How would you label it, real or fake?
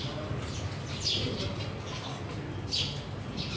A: real